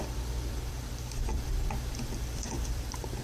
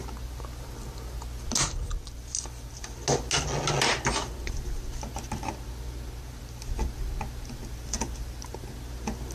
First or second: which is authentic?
second